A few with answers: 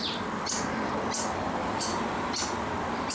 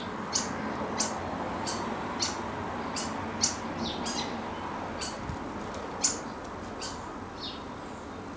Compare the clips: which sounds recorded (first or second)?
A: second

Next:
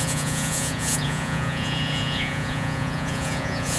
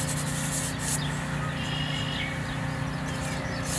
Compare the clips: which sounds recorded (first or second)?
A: second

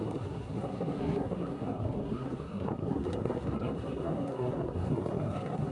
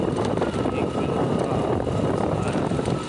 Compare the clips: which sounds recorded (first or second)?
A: second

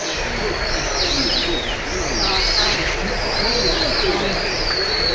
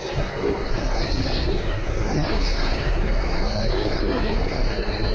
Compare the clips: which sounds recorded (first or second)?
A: first